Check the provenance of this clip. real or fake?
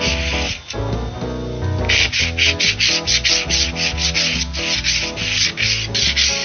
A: real